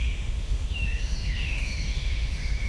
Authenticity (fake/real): fake